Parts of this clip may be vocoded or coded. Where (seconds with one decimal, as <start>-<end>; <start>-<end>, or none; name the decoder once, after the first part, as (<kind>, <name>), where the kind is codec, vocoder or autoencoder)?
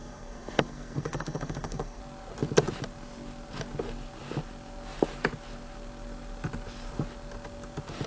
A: 0.0-2.0 (codec, SNAC)